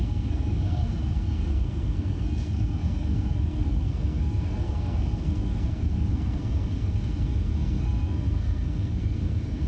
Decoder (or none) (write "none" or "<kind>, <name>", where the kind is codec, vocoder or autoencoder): codec, SNAC